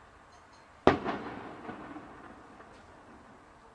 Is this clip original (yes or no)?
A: yes